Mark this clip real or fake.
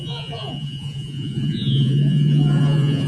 fake